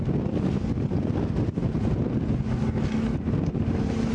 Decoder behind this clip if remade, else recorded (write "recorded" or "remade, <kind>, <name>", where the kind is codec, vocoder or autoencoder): recorded